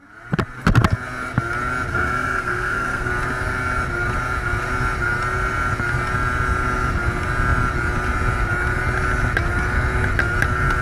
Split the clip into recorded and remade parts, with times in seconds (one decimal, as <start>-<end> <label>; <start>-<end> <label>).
0.0-1.9 recorded; 1.9-3.1 remade; 3.1-10.8 recorded